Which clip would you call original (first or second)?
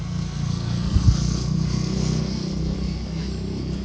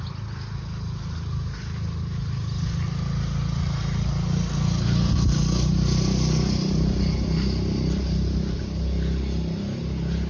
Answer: second